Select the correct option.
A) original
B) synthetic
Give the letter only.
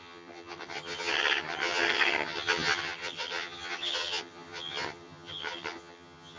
B